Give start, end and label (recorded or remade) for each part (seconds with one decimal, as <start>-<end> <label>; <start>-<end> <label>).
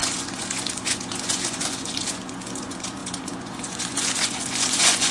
0.0-5.1 remade